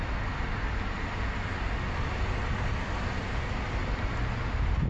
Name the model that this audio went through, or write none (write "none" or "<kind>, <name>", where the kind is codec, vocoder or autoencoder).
none